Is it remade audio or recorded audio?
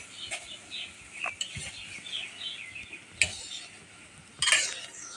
recorded